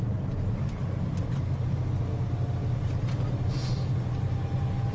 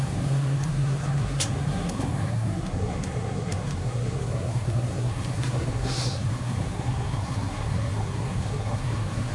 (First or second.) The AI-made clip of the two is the second